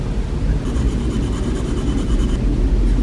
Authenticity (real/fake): real